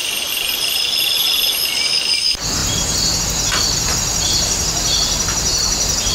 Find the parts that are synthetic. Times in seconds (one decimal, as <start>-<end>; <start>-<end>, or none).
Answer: none